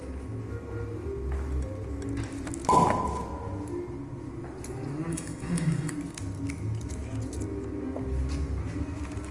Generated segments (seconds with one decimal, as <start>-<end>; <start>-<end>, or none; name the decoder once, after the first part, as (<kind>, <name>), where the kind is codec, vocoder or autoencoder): 5.1-5.9 (autoencoder, DAC-VAE)